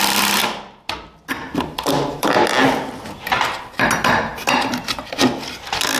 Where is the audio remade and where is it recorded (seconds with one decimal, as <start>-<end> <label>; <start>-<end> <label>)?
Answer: 0.0-0.4 recorded; 0.4-3.3 remade; 3.3-6.0 recorded